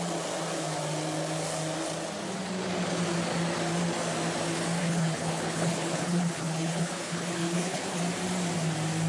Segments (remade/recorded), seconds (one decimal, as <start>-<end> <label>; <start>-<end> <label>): 0.0-4.8 recorded; 4.8-8.0 remade; 8.0-9.1 recorded